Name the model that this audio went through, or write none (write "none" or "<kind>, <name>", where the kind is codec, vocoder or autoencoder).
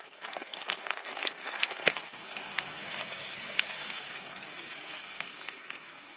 codec, SNAC